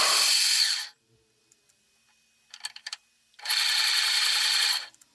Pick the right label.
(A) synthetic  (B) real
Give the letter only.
A